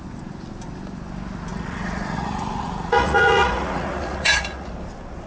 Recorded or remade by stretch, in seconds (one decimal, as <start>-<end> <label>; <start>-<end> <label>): 0.0-1.5 recorded; 1.5-4.7 remade; 4.7-5.3 recorded